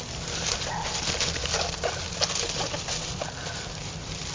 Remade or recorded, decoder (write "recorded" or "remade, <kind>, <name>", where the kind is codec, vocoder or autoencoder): recorded